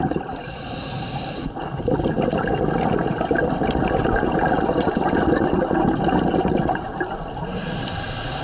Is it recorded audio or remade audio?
recorded